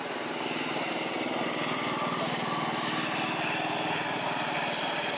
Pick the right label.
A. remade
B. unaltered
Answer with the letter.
B